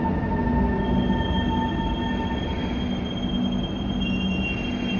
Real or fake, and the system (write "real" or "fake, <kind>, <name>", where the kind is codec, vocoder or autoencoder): real